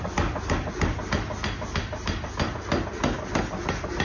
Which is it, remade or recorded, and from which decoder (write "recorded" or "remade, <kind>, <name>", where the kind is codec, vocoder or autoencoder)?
recorded